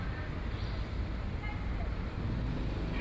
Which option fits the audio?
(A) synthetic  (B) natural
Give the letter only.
B